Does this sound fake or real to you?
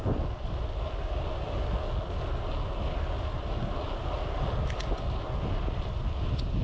real